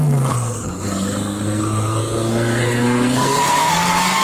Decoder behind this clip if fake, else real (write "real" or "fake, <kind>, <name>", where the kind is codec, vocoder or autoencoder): fake, codec, SNAC